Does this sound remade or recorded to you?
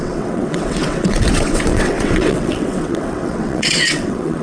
remade